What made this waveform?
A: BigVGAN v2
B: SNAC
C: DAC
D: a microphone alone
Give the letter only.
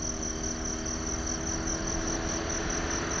D